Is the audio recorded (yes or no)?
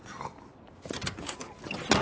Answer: yes